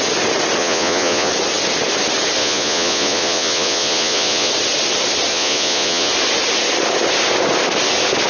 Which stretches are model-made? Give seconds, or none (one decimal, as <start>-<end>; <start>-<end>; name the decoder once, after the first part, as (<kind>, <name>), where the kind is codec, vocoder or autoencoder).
0.6-1.3 (vocoder, Vocos); 2.4-4.5; 5.3-6.1